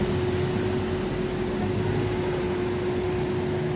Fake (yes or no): no